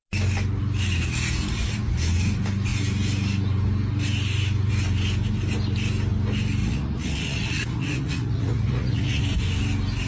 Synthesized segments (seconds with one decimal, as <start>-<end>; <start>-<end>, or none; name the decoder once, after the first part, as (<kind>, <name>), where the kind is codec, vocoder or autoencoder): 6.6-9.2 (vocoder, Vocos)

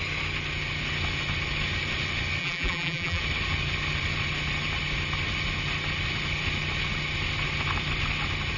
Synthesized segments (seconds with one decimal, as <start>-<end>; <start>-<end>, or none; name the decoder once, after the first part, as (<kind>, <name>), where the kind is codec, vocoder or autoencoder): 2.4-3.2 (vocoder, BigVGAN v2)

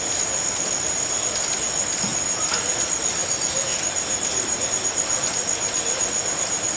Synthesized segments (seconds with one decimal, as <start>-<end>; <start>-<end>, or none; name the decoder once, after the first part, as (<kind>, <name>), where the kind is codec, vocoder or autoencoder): 2.1-2.7 (vocoder, BigVGAN v2); 3.7-4.7

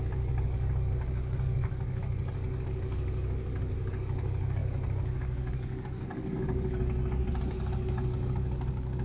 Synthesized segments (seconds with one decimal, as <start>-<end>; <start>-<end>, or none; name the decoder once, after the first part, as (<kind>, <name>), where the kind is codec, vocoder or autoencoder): 0.0-9.0 (codec, DAC)

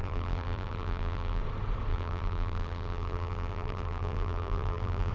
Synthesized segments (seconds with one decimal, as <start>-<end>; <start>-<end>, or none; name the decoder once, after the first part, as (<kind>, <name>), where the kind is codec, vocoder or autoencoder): 0.0-1.4 (vocoder, BigVGAN v2); 1.9-5.1